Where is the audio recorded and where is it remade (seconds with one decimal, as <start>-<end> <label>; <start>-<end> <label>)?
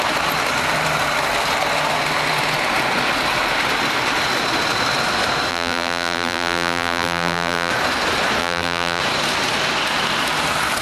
0.0-5.5 recorded; 5.5-7.7 remade; 7.7-8.4 recorded; 8.4-9.0 remade; 9.0-10.8 recorded